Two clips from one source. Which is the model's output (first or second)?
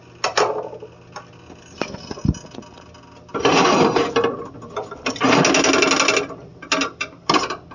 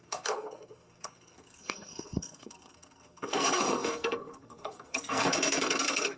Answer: second